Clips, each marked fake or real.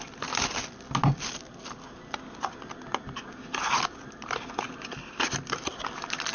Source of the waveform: real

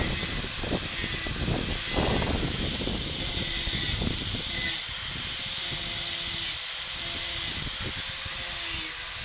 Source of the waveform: real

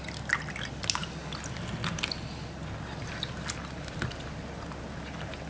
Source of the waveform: real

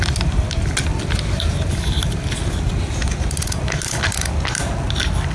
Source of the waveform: real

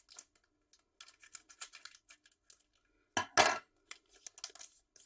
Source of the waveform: real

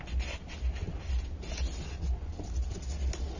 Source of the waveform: real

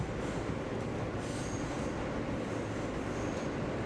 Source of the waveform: real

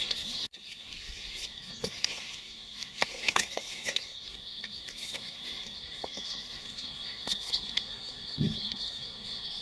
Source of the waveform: fake